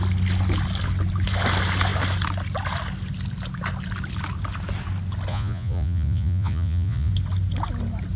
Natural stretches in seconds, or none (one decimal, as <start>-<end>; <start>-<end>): 0.0-5.3; 7.1-8.2